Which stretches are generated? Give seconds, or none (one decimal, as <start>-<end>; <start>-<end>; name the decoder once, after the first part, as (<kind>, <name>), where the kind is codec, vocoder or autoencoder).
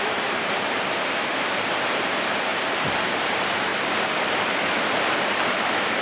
0.0-3.7 (vocoder, BigVGAN v2); 4.3-6.0